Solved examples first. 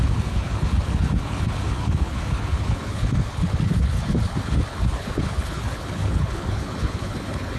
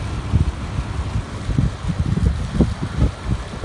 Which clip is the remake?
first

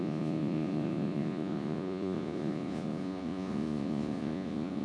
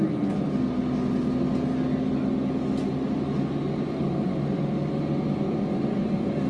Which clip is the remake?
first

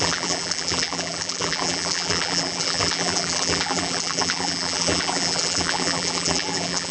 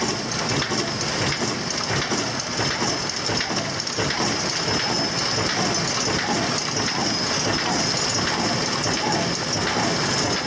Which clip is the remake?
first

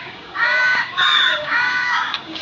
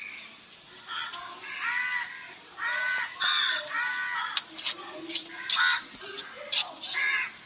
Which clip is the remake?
first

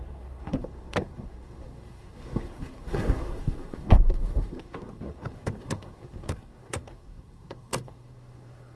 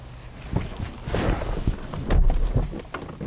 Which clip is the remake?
first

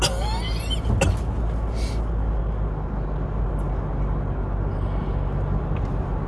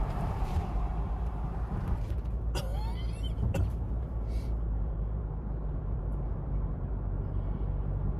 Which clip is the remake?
second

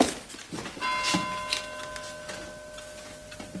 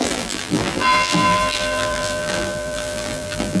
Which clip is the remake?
second